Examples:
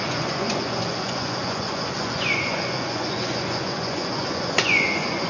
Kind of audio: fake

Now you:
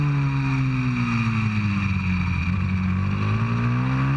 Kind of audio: real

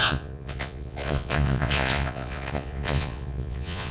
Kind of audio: fake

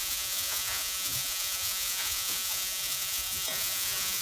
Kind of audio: fake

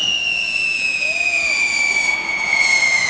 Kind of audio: fake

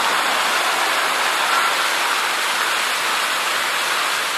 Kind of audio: real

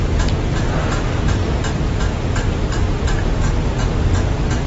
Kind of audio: real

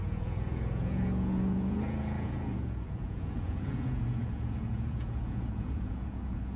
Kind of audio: fake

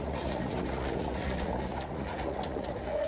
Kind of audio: fake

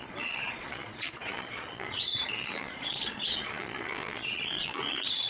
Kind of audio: fake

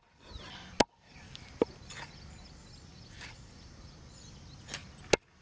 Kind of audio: real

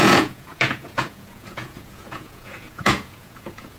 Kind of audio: fake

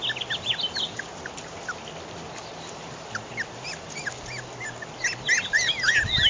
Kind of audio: real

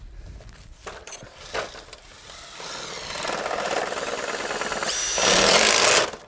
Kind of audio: real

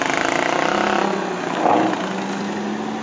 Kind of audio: real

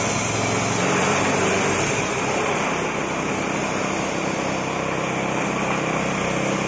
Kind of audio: real